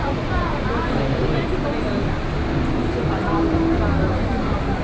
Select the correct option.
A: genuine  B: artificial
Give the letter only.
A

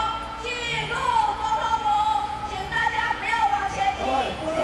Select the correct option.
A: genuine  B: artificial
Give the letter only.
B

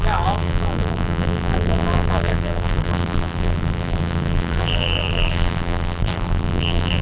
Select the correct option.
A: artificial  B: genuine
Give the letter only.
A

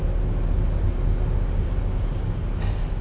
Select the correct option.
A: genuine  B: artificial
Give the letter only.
A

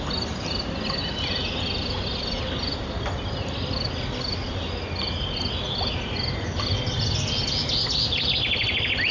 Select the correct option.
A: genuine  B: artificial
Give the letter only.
A